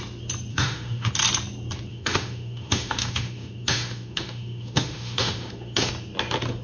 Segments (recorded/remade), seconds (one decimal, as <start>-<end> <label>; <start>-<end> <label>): 0.0-0.5 recorded; 0.5-1.1 remade; 1.1-1.9 recorded; 1.9-5.9 remade; 5.9-6.6 recorded